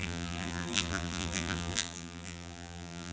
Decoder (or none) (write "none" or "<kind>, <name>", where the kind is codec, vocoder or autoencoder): vocoder, BigVGAN v2